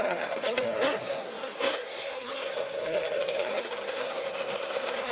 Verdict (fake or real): fake